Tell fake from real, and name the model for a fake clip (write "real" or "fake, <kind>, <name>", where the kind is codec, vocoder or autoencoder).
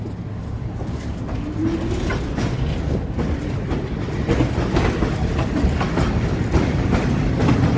real